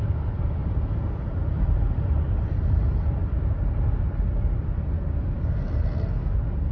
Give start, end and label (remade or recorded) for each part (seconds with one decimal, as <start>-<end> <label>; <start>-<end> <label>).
0.0-6.7 recorded